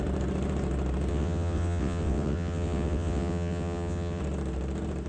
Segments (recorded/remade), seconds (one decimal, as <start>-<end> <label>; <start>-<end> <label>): 0.0-1.1 recorded; 1.1-4.2 remade; 4.2-5.1 recorded

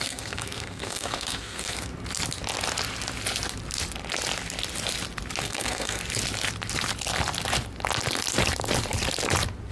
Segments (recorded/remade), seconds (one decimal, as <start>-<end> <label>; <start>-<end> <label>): 0.0-1.9 remade; 1.9-5.4 recorded; 5.4-6.0 remade; 6.0-9.7 recorded

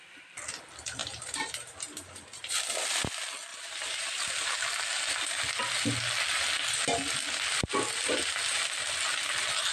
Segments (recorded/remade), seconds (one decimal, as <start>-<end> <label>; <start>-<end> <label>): 0.0-1.0 recorded; 1.0-2.8 remade; 2.8-3.5 recorded; 3.5-4.5 remade; 4.5-9.7 recorded

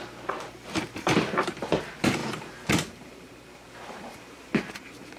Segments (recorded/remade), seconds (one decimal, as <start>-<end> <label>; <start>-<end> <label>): 0.0-5.2 remade

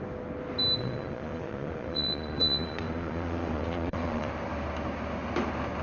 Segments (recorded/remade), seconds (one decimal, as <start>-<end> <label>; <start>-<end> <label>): 0.0-0.8 recorded; 0.8-4.3 remade; 4.3-5.8 recorded

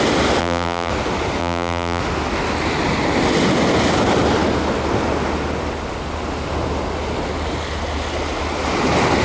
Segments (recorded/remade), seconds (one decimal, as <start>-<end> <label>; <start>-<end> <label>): 0.0-0.4 recorded; 0.4-0.9 remade; 0.9-1.4 recorded; 1.4-2.0 remade; 2.0-9.2 recorded